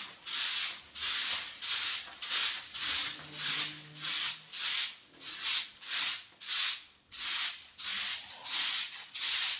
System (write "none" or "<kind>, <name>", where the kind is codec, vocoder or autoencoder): none